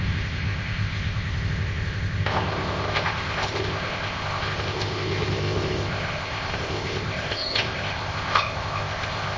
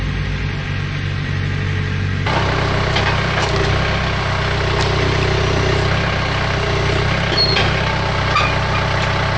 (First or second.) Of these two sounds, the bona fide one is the second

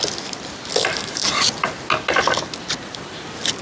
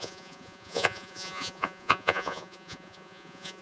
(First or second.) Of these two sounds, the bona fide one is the first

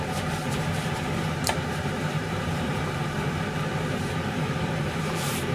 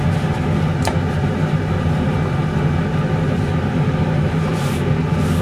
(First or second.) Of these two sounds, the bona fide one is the second